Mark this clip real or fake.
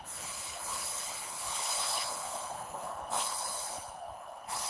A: fake